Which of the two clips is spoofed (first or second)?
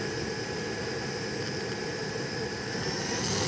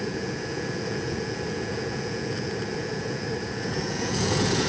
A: second